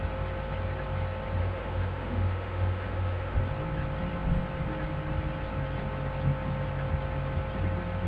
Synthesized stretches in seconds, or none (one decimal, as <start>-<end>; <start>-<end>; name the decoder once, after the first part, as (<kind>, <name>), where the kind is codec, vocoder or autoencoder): 1.4-3.4 (autoencoder, DAC-VAE)